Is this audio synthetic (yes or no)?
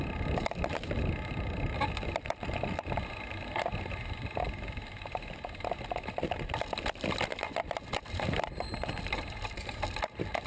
yes